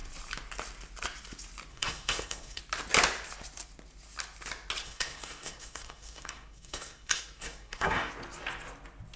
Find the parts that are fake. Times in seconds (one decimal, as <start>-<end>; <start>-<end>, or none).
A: 1.7-2.6; 4.8-8.1